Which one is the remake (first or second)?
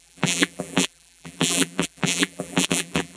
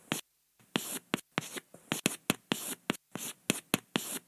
first